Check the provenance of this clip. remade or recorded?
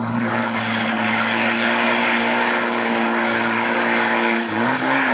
remade